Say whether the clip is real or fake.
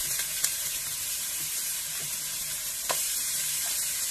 fake